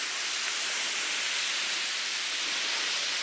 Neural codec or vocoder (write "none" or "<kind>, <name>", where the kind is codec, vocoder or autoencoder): none